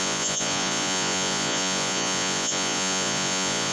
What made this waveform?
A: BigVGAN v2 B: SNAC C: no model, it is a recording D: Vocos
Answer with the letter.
D